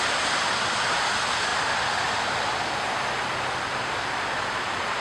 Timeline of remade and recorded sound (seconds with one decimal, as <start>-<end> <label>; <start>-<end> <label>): 0.0-5.0 recorded